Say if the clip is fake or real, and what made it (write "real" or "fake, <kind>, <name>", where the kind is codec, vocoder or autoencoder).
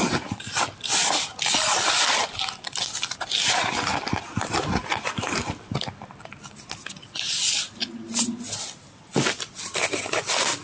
real